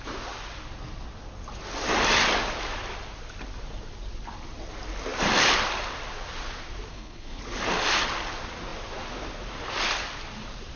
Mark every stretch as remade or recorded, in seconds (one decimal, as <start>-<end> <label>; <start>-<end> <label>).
0.0-6.9 recorded; 6.9-7.4 remade; 7.4-10.8 recorded